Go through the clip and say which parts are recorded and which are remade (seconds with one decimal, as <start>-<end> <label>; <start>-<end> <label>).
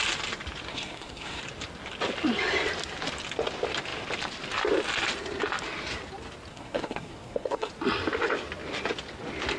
0.0-0.7 recorded; 0.7-1.4 remade; 1.4-6.5 recorded; 6.5-7.7 remade; 7.7-9.6 recorded